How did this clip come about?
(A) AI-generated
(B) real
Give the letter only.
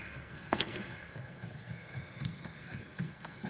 A